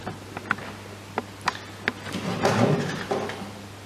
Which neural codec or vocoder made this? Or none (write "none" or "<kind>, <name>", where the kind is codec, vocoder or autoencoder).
none